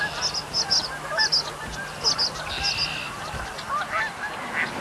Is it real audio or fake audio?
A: real